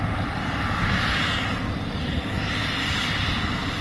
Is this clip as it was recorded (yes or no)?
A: yes